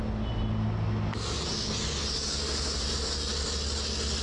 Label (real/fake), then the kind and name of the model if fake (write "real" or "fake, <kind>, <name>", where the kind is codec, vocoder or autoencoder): real